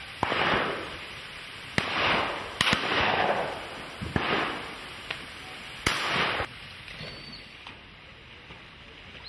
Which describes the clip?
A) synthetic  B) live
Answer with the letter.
B